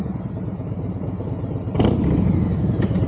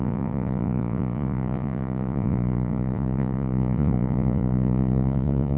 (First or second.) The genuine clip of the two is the first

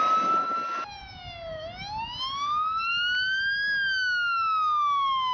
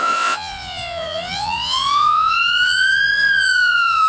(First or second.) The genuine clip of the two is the first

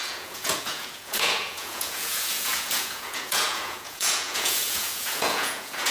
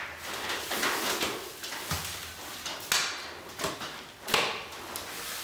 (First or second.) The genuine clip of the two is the second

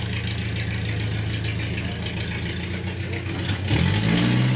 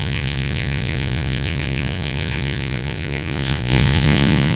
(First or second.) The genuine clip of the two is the first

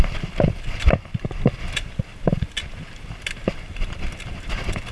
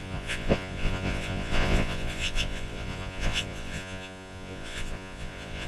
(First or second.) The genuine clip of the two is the first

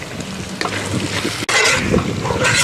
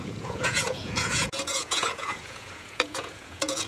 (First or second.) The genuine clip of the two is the first